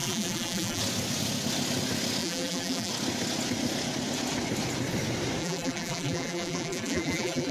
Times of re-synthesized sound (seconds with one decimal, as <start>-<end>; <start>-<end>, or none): 0.0-0.8; 2.2-2.9; 5.4-7.5